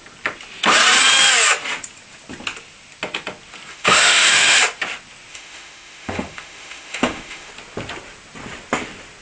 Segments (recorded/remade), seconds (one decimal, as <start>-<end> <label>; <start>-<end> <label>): 0.0-3.7 recorded; 3.7-4.6 remade; 4.6-5.3 recorded; 5.3-7.5 remade; 7.5-9.2 recorded